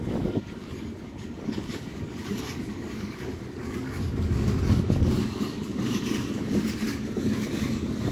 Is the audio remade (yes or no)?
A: yes